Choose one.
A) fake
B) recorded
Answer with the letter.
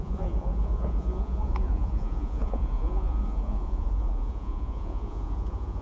A